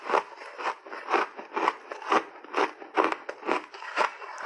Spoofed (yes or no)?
no